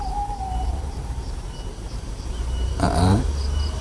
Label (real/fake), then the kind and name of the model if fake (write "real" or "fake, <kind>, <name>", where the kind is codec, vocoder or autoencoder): fake, vocoder, BigVGAN v2